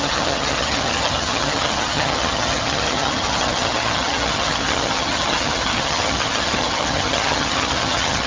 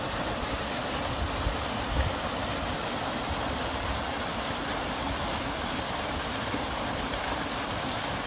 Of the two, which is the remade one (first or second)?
first